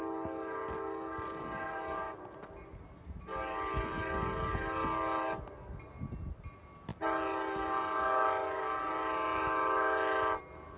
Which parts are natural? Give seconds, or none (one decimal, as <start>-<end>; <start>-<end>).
0.0-10.8